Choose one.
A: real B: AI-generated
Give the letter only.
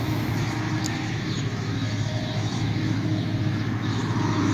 B